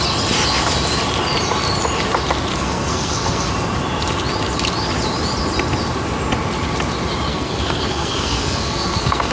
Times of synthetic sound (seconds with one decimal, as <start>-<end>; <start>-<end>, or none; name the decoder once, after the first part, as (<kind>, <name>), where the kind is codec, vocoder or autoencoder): 2.5-3.5 (codec, SNAC); 7.3-9.3